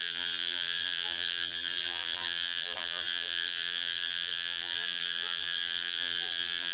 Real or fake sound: fake